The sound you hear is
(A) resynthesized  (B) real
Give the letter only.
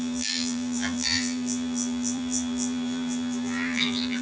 A